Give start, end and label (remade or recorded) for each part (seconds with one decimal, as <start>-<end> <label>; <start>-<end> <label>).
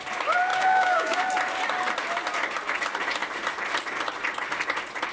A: 0.0-0.5 recorded; 0.5-1.2 remade; 1.2-5.1 recorded